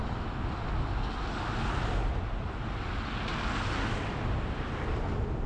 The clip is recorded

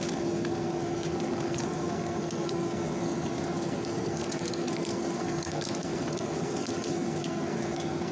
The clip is remade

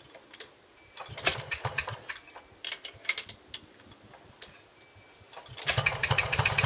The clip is recorded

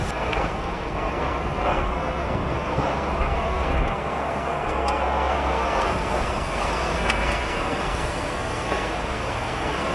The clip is remade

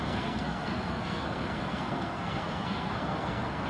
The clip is remade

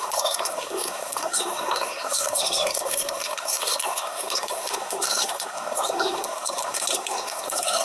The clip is remade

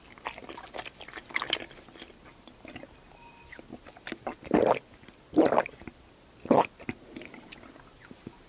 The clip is recorded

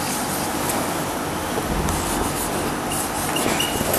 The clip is recorded